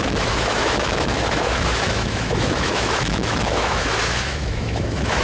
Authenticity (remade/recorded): remade